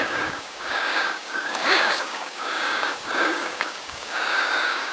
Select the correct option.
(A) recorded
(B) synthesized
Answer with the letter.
B